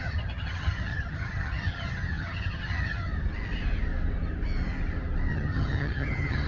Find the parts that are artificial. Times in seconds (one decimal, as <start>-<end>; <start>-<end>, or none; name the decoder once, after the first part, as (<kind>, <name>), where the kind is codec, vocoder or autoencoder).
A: 0.0-3.1 (vocoder, HiFi-GAN); 5.3-6.5